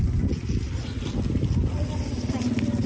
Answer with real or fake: real